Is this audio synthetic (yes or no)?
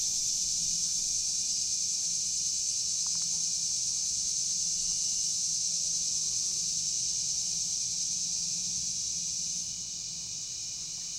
no